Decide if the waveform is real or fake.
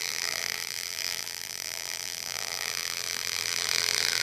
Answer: fake